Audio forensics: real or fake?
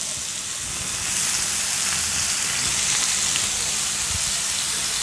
real